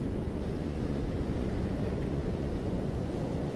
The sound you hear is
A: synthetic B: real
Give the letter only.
A